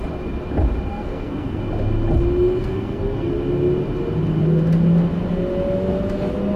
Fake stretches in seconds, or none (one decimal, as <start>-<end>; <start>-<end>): 0.9-1.6; 2.6-3.3